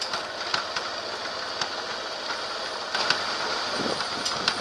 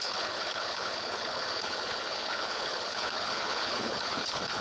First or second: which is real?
first